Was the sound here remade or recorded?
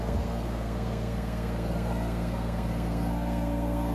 remade